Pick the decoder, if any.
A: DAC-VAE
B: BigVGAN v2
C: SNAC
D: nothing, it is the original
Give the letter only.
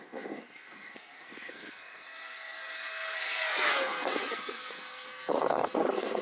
C